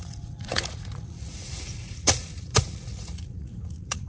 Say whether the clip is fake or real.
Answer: fake